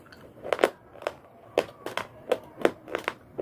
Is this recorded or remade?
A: recorded